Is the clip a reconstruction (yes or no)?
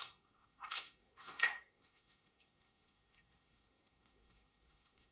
yes